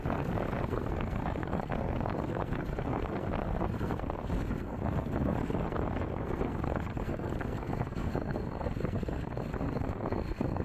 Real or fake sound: fake